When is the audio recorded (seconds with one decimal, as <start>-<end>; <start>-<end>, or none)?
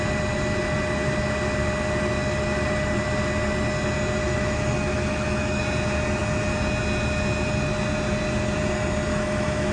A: 0.0-4.2; 5.6-9.1